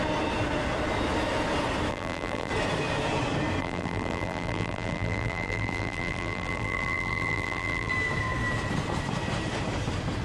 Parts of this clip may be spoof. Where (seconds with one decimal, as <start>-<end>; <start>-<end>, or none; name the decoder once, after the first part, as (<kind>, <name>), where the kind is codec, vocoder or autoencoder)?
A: 1.9-2.5 (vocoder, BigVGAN v2); 3.6-7.9